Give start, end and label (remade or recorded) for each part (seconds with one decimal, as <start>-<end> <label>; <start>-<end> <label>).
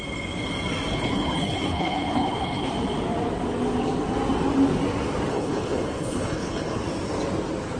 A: 0.0-0.9 recorded; 0.9-2.7 remade; 2.7-5.3 recorded; 5.3-6.8 remade; 6.8-7.8 recorded